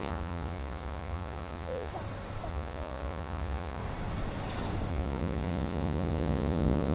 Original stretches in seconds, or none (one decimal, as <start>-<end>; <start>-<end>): 1.9-2.5; 3.8-4.9